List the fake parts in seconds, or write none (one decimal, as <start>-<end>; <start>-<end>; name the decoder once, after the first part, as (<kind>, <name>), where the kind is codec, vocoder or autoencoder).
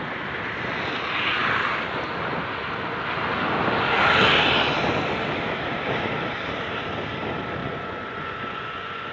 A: 7.6-9.1 (vocoder, Vocos)